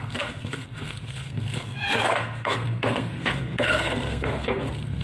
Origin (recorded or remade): remade